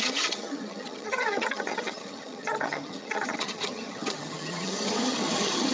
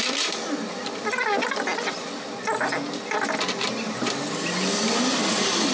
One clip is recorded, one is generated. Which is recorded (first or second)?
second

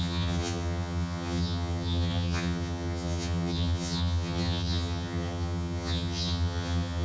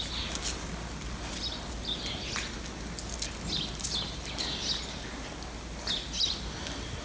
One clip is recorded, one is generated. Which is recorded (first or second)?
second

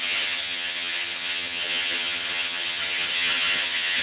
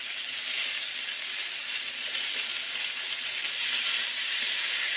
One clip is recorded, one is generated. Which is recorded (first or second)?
second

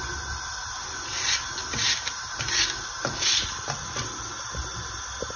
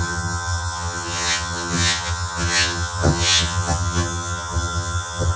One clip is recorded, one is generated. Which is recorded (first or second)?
first